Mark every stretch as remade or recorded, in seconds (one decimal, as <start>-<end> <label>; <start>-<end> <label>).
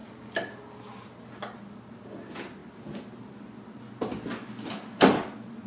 0.0-5.7 recorded